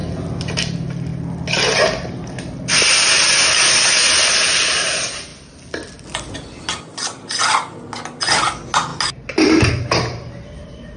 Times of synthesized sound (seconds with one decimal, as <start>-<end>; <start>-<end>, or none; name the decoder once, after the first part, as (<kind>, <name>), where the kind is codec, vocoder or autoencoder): none